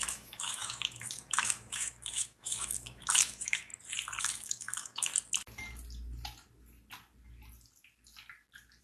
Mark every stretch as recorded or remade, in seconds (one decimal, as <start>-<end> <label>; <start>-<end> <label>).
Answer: 0.0-3.7 remade; 3.7-4.2 recorded; 4.2-5.1 remade; 5.1-8.8 recorded